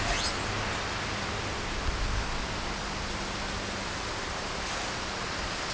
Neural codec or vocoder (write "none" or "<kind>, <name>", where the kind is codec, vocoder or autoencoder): none